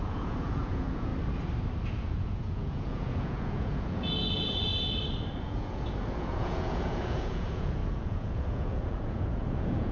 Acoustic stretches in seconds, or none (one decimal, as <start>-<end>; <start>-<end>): 1.1-1.9; 4.7-5.4